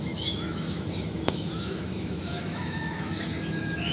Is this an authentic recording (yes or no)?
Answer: no